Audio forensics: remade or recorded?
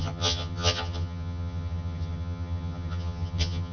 remade